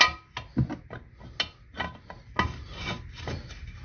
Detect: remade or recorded recorded